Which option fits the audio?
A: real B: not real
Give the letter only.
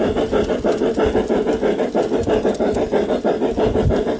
A